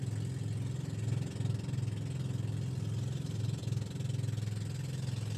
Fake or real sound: real